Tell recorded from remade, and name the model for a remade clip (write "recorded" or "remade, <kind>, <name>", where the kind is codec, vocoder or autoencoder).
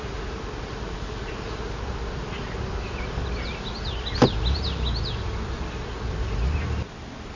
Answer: recorded